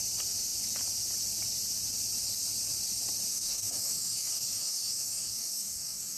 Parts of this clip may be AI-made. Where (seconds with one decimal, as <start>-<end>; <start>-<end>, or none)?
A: 3.3-6.2